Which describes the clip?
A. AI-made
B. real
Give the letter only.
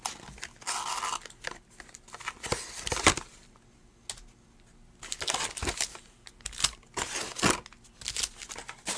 B